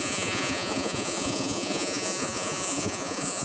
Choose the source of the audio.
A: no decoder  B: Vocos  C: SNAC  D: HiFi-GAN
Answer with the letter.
B